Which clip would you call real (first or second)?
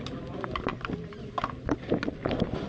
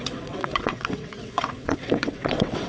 first